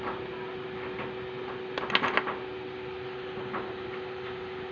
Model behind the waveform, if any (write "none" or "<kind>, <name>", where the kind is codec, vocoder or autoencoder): none